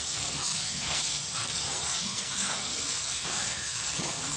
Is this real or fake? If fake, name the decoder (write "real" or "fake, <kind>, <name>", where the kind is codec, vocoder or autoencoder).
fake, codec, SNAC